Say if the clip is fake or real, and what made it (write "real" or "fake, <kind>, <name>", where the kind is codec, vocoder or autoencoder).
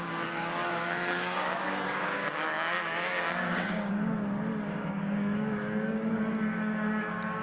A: fake, codec, DAC